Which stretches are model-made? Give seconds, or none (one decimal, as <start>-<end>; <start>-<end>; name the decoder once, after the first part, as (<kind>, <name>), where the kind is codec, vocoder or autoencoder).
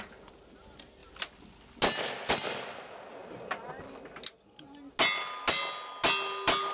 none